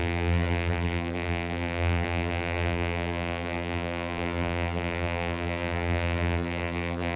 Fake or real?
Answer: fake